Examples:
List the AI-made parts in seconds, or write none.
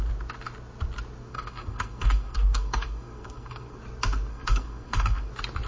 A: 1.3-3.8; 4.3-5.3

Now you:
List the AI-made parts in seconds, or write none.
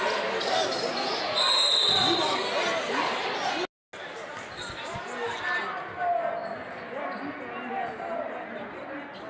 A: none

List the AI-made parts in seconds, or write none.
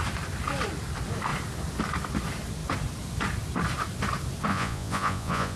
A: 4.5-5.6